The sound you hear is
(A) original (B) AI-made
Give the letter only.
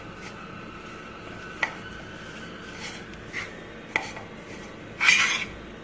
A